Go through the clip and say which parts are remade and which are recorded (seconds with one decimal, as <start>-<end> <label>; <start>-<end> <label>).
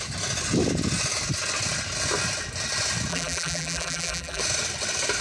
0.0-3.1 recorded; 3.1-4.4 remade; 4.4-5.2 recorded